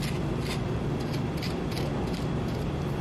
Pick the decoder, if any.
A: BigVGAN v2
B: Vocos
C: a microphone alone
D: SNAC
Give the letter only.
C